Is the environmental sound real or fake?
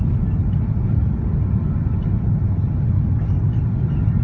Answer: real